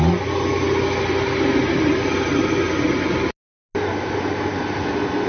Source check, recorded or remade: recorded